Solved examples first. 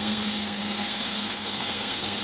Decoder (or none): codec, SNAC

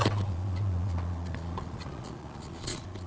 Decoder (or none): vocoder, Vocos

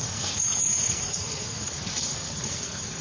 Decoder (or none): codec, SNAC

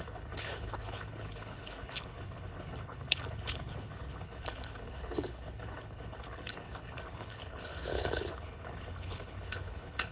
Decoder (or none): codec, HILCodec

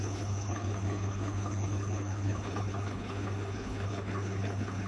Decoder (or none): codec, HILCodec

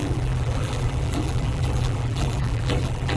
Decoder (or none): vocoder, BigVGAN v2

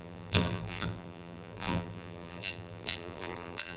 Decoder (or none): vocoder, BigVGAN v2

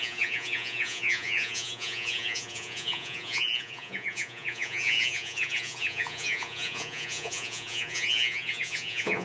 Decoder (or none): vocoder, Vocos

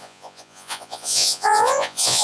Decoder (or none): vocoder, Vocos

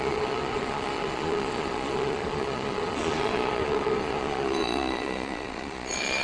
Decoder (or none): vocoder, Vocos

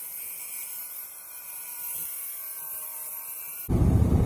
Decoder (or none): vocoder, BigVGAN v2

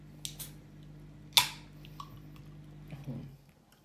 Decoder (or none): none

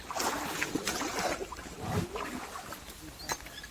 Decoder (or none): none